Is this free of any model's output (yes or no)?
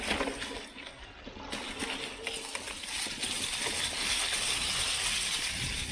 yes